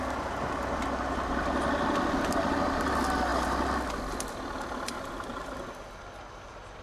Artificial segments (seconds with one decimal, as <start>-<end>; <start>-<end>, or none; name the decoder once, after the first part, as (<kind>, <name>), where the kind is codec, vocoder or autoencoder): none